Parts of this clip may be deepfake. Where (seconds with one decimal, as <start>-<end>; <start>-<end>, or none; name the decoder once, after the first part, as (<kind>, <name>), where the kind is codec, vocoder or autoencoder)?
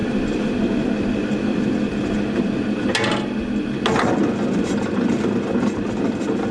0.0-0.6 (vocoder, BigVGAN v2)